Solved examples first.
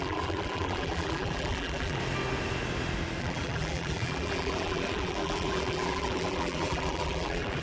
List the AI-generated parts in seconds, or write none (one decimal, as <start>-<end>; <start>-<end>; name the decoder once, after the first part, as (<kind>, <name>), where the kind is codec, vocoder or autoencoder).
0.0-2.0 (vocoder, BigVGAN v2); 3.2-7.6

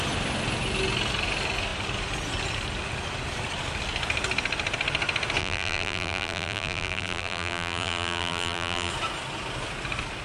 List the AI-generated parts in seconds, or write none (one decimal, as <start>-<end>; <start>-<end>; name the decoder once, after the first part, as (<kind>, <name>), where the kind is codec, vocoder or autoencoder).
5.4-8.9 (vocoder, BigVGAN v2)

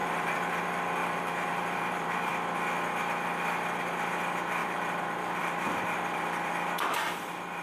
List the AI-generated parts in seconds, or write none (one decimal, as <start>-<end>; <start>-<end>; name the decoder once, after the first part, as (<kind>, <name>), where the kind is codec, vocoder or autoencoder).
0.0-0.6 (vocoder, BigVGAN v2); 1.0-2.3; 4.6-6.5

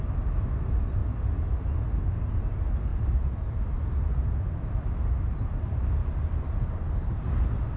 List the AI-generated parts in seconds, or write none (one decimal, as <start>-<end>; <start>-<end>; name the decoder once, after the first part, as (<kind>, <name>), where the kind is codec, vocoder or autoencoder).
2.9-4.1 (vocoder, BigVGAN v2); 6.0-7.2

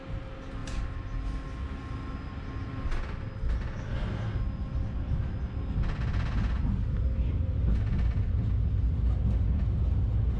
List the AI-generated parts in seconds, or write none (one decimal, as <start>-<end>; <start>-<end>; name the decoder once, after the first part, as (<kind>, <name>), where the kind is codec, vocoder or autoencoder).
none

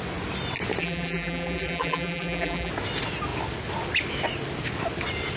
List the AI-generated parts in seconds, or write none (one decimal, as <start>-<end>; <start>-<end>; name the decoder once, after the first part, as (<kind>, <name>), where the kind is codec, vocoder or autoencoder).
0.8-2.7 (vocoder, BigVGAN v2)